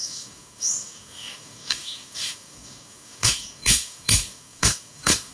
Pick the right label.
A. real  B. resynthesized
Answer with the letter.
B